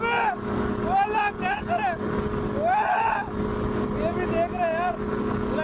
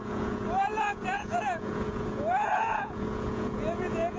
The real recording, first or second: first